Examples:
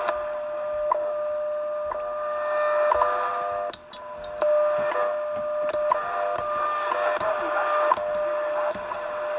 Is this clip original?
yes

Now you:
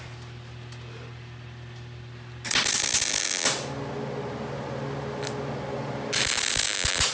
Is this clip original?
yes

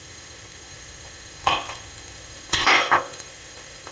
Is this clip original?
no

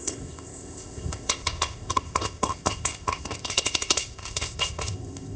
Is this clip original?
no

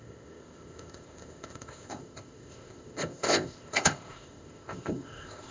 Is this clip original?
no